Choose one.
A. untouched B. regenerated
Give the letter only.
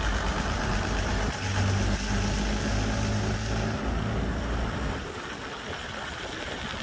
A